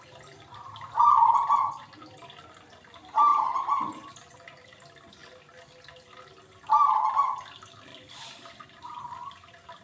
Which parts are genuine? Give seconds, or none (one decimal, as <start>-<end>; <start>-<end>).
0.0-9.8